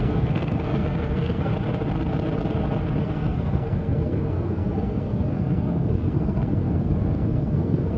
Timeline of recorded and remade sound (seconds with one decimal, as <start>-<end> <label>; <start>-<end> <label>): 0.0-1.5 remade; 1.5-3.0 recorded; 3.0-8.0 remade